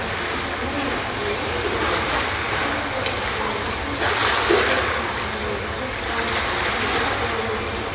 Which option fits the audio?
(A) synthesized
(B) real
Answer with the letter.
B